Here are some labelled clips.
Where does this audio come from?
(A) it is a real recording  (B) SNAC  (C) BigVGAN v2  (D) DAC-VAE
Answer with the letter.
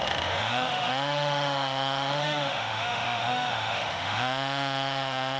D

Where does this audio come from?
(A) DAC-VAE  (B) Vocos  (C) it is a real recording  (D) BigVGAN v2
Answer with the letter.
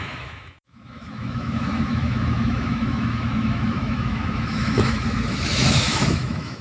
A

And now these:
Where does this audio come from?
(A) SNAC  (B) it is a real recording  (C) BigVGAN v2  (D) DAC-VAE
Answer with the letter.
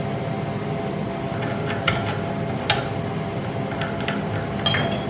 B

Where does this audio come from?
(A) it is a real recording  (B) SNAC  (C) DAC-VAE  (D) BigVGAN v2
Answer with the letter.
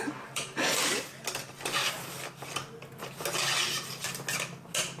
A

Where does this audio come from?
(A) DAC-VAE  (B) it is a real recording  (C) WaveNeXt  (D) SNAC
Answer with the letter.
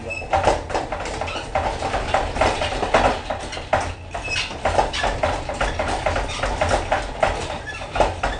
B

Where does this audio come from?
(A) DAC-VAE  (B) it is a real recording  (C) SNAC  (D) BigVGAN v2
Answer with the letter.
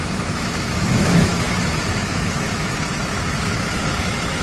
A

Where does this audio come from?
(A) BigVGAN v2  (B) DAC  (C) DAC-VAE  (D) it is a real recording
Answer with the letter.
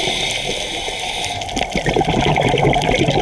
D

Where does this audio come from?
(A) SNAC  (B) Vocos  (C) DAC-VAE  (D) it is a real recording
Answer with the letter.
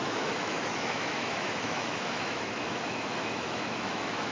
C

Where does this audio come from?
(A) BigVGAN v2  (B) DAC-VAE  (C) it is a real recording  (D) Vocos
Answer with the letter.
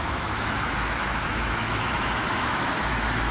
B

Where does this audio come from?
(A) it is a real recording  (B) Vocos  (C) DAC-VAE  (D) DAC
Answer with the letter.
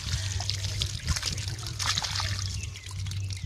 A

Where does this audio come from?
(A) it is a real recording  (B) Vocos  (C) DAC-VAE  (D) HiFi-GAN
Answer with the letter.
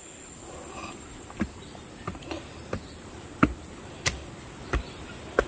A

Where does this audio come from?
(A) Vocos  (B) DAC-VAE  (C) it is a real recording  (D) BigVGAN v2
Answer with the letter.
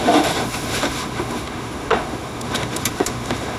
B